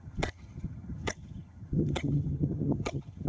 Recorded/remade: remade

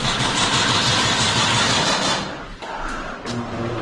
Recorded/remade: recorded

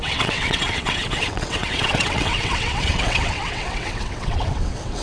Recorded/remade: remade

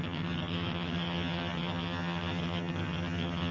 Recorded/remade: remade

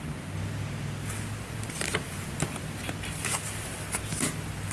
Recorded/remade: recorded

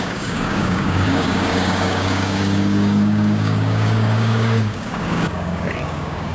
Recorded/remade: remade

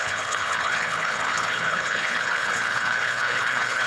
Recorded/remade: remade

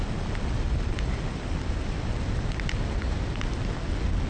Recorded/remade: recorded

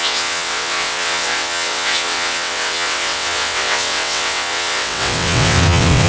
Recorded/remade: remade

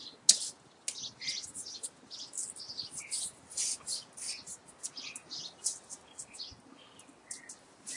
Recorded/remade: recorded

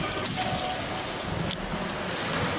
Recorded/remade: recorded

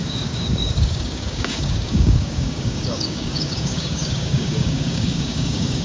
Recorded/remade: remade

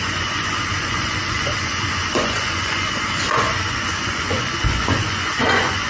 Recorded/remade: remade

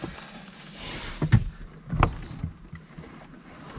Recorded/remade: recorded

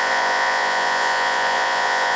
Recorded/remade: remade